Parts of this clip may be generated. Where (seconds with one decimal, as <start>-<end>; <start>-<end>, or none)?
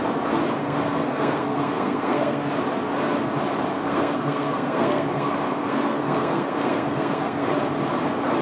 0.6-2.5; 3.7-7.5